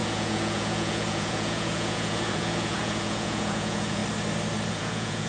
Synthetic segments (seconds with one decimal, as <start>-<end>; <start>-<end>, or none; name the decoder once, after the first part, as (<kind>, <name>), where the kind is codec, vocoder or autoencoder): 0.0-4.0 (vocoder, Vocos); 4.7-5.3